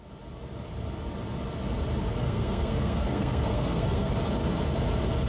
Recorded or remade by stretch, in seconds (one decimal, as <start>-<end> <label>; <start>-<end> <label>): 0.0-2.2 recorded; 2.2-4.1 remade; 4.1-5.3 recorded